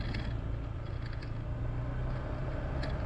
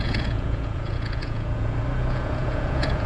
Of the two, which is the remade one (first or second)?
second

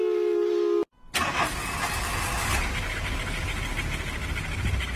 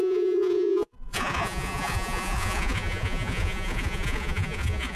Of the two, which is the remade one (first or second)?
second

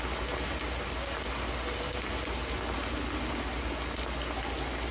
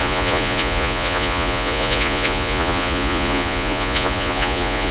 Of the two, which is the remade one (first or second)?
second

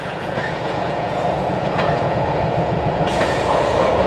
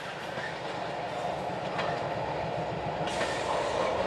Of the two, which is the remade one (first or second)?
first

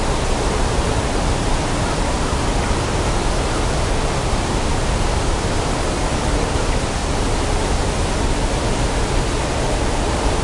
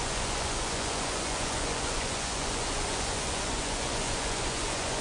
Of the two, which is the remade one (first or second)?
second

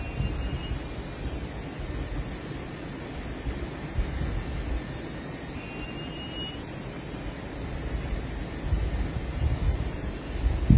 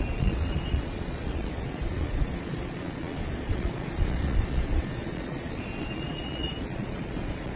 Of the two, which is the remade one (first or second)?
second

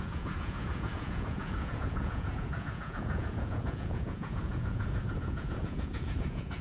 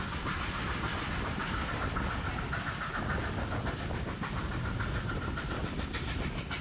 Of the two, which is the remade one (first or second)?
first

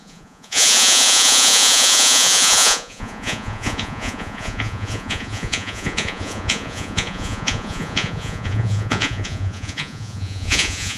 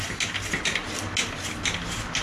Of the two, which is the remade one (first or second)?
first